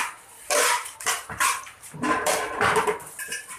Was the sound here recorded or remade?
remade